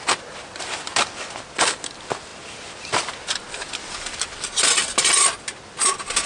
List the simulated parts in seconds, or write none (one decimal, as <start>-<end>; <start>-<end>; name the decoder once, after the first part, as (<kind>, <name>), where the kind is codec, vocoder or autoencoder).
none